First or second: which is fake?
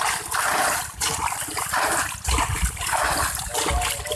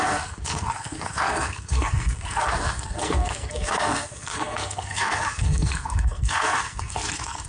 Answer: second